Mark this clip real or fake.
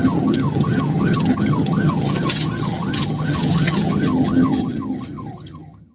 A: fake